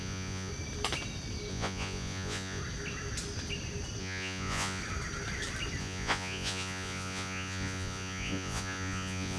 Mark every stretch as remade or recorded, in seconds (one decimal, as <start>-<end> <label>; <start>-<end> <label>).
0.0-0.5 remade; 0.5-1.5 recorded; 1.5-2.6 remade; 2.6-4.0 recorded; 4.0-4.8 remade; 4.8-5.8 recorded; 5.8-9.4 remade